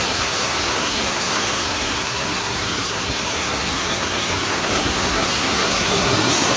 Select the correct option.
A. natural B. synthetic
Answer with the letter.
B